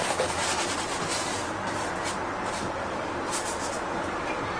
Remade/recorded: recorded